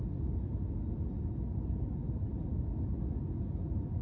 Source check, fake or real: real